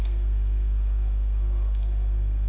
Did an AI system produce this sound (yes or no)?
yes